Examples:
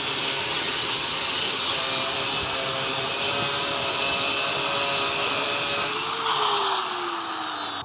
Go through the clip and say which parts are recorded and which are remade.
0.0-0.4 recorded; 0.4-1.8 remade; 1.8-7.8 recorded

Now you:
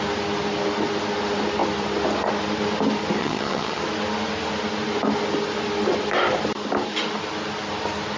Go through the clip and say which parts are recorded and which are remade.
0.0-3.2 recorded; 3.2-3.8 remade; 3.8-8.2 recorded

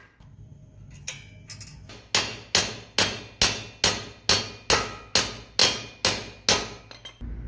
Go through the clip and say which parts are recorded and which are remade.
0.0-7.5 recorded

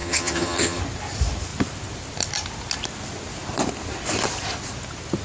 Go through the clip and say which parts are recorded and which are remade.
0.0-0.8 remade; 0.8-5.2 recorded

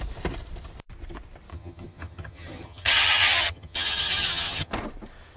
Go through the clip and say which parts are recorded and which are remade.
0.0-1.5 recorded; 1.5-4.7 remade; 4.7-5.4 recorded

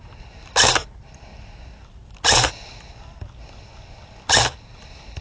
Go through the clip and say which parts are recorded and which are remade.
0.0-5.2 recorded

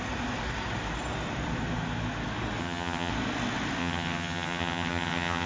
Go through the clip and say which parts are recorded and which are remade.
0.0-2.6 recorded; 2.6-3.1 remade; 3.1-3.8 recorded; 3.8-5.5 remade